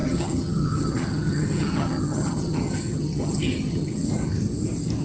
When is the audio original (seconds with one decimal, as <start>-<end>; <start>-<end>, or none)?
4.0-5.0

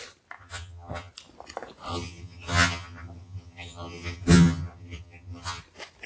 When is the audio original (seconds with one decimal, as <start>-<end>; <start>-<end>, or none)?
0.0-0.4; 1.1-1.9; 5.6-6.1

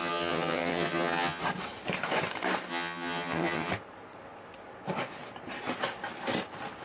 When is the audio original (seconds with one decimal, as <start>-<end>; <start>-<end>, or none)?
1.4-2.7; 3.7-6.8

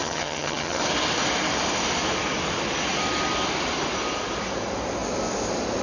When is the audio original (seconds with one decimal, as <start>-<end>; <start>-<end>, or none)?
0.8-5.8

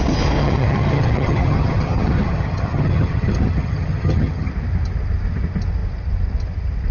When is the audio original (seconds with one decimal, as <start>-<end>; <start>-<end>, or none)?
0.0-0.4; 4.5-6.9